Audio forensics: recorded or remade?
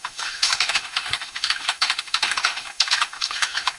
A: remade